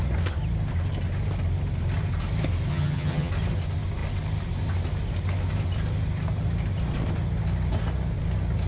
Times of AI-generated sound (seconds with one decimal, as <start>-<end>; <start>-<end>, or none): 2.7-3.3